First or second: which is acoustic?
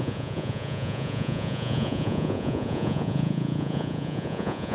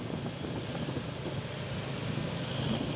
second